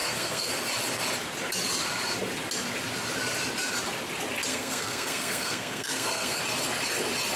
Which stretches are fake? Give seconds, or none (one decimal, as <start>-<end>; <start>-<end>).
0.0-0.5; 4.5-6.4